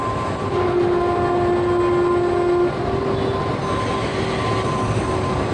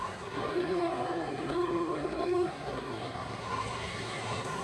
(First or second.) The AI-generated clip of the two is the second